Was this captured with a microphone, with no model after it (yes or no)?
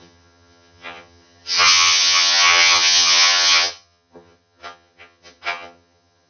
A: no